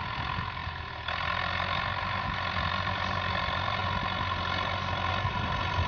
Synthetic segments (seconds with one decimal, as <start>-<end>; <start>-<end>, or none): 0.0-3.8; 5.1-5.9